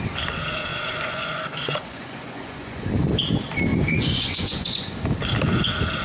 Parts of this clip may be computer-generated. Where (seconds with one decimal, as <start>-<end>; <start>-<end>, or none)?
0.7-2.9; 3.7-4.9